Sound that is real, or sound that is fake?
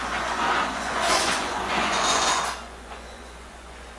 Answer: fake